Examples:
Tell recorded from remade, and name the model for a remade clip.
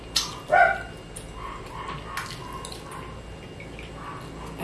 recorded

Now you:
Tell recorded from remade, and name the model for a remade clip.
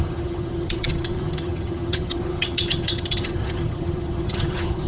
remade, vocoder, HiFi-GAN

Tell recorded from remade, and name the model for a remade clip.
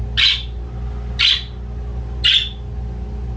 recorded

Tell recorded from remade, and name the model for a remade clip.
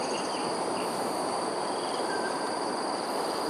remade, vocoder, BigVGAN v2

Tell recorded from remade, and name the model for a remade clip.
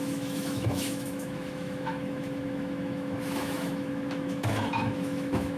remade, autoencoder, DAC-VAE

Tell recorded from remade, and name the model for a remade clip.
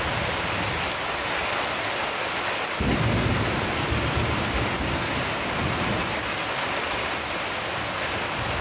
recorded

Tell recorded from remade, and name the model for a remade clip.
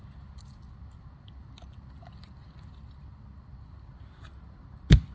recorded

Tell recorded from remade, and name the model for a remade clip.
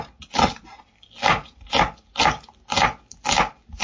recorded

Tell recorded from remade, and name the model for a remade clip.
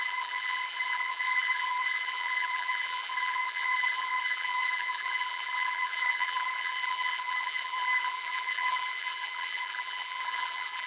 remade, vocoder, BigVGAN v2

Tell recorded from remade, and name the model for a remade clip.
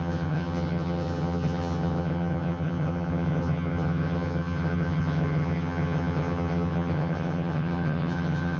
remade, vocoder, HiFi-GAN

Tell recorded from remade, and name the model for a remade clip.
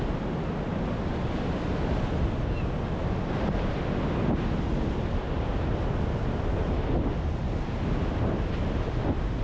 recorded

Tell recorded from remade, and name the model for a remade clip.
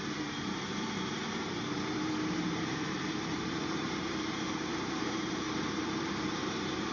remade, vocoder, BigVGAN v2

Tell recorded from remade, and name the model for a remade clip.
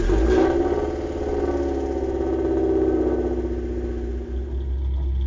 recorded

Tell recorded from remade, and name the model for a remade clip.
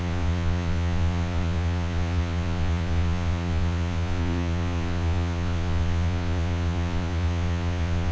remade, vocoder, Vocos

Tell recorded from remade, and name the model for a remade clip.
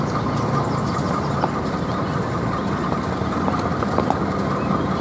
recorded